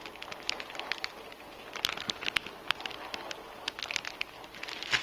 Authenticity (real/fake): real